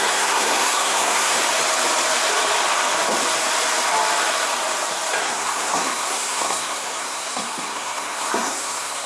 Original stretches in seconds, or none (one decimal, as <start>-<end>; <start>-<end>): 1.4-5.2